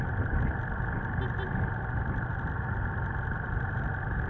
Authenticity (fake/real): real